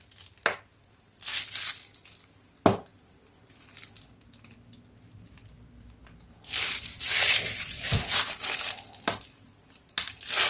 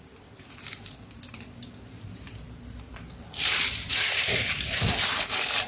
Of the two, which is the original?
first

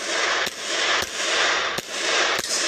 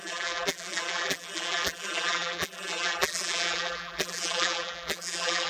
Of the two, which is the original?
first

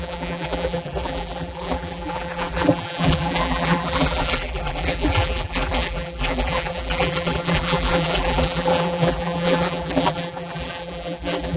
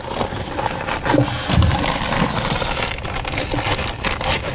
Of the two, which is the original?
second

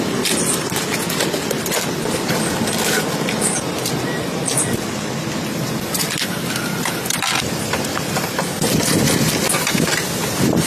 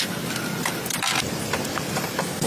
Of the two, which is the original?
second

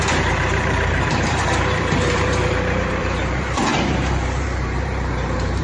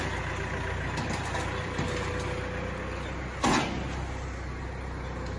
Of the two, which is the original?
second